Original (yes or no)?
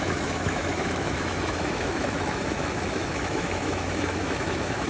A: no